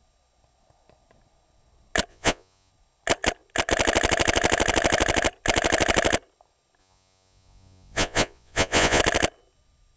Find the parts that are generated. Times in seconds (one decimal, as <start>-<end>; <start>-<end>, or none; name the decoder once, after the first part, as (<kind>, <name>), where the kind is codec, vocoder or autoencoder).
2.1-2.7 (vocoder, Vocos); 6.8-9.0